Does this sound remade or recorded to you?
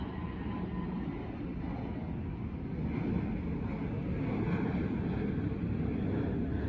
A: recorded